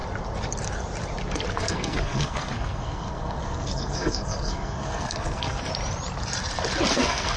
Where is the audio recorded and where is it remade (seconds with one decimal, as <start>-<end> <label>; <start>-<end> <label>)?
0.0-1.5 recorded; 1.5-5.7 remade; 5.7-6.9 recorded; 6.9-7.4 remade